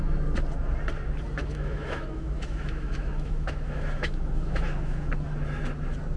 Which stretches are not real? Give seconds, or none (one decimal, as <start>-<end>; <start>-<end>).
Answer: 1.4-5.1